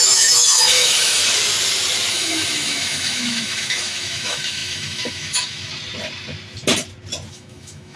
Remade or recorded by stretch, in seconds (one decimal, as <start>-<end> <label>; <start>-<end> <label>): 0.0-1.2 remade; 1.2-2.1 recorded; 2.1-5.7 remade; 5.7-7.3 recorded; 7.3-8.0 remade